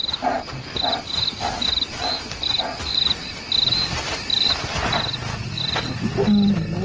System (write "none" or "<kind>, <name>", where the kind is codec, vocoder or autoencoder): none